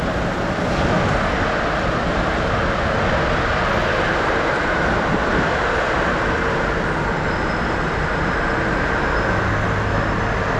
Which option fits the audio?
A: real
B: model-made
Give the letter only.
A